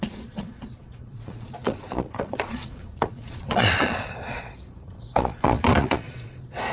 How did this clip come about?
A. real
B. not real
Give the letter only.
B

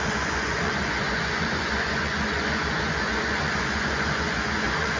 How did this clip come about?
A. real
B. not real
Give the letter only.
B